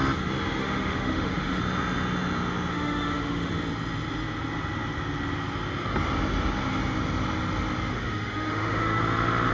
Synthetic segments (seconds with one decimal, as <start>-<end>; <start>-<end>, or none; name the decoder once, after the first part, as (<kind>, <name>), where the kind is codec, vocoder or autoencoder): 0.6-1.6 (autoencoder, DAC-VAE); 2.7-3.5; 7.9-9.0